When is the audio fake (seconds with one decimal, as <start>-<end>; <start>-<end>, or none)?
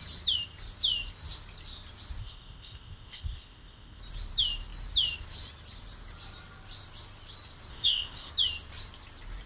2.2-4.0; 7.7-8.3